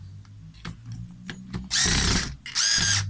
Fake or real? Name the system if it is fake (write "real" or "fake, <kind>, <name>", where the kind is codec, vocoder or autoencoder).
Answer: real